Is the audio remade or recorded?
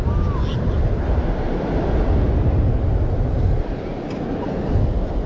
recorded